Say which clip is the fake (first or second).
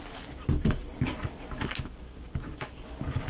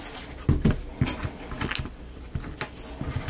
first